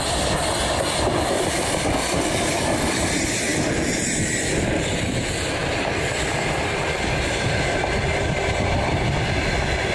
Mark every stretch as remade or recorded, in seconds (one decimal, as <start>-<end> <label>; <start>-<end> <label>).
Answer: 0.0-3.5 remade; 3.5-4.3 recorded; 4.3-9.9 remade